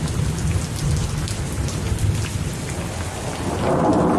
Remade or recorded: recorded